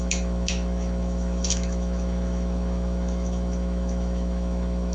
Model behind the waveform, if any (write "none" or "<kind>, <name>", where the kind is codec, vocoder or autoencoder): autoencoder, DAC-VAE